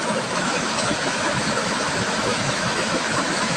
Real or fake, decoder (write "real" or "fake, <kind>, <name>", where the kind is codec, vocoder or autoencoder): fake, autoencoder, DAC-VAE